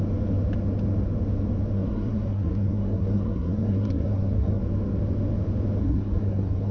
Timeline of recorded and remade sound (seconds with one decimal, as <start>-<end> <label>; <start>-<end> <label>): 0.0-1.7 recorded; 1.7-4.6 remade; 4.6-5.8 recorded; 5.8-6.7 remade